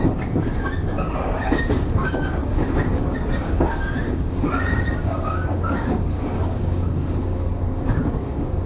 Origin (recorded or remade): remade